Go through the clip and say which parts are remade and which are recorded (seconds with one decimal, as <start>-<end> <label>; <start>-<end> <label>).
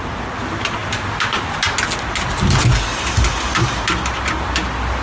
0.0-5.0 recorded